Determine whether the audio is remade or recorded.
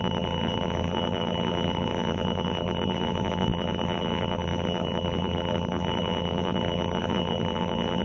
remade